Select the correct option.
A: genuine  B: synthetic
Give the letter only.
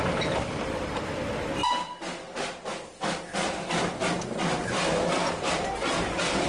A